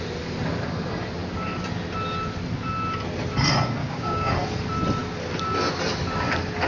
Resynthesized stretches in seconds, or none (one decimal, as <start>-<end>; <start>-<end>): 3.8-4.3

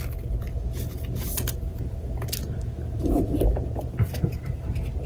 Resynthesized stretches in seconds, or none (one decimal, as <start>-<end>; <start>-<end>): 1.7-5.1

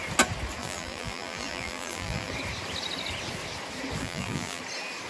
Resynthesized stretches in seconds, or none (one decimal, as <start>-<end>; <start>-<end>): 0.6-2.3; 4.0-4.6

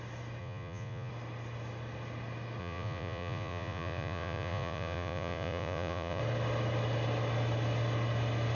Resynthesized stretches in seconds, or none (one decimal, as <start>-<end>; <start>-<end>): 0.4-1.1; 2.6-6.2

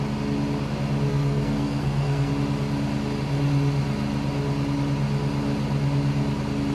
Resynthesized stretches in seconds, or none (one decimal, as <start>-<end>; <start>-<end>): 1.1-2.3

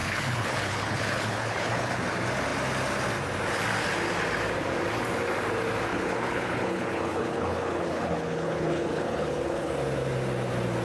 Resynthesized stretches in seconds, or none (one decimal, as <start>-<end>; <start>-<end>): 0.0-2.0; 5.9-9.7

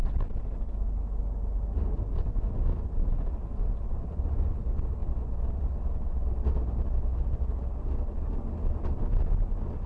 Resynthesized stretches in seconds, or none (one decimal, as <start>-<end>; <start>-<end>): 0.0-0.7